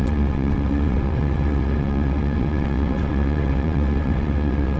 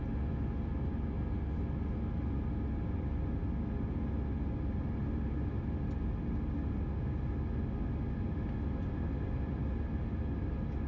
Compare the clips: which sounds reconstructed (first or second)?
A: first